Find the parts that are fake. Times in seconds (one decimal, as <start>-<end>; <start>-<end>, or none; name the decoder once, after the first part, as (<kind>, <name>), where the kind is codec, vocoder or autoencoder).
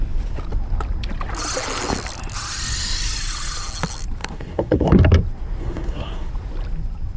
4.2-5.0 (codec, SNAC); 5.6-6.3